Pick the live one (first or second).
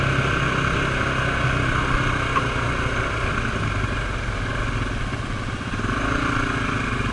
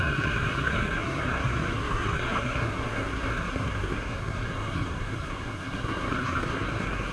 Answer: first